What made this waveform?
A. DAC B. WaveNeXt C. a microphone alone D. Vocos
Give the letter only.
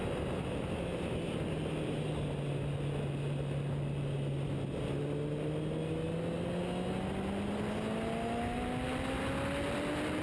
C